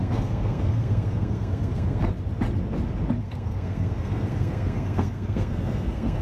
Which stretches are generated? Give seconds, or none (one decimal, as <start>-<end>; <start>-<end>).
0.0-2.0; 3.2-6.2